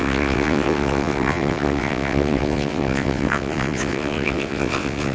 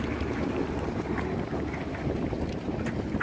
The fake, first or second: first